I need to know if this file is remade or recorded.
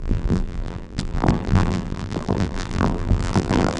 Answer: remade